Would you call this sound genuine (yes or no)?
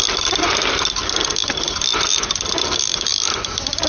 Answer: yes